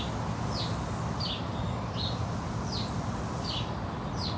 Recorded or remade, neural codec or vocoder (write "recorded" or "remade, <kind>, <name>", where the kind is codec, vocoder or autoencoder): recorded